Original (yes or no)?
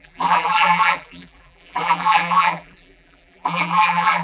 no